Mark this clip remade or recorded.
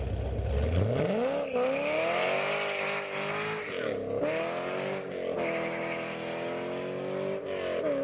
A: recorded